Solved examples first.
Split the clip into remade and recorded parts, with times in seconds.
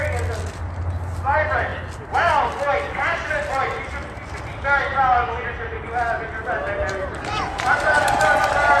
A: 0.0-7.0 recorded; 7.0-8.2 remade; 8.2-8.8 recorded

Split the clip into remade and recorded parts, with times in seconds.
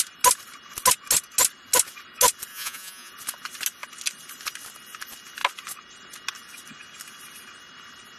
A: 0.0-2.5 recorded; 2.5-3.1 remade; 3.1-8.2 recorded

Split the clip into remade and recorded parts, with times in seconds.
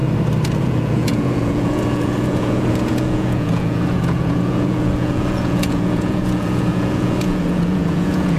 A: 0.0-0.6 recorded; 0.6-8.4 remade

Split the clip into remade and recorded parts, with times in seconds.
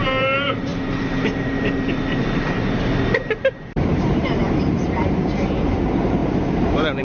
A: 0.0-4.4 remade; 4.4-5.0 recorded; 5.0-7.0 remade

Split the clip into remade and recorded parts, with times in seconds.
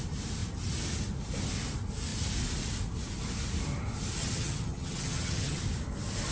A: 0.0-4.2 recorded; 4.2-5.6 remade; 5.6-6.3 recorded